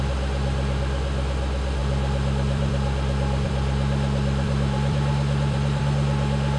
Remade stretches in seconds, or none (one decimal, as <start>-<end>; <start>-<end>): 1.8-5.8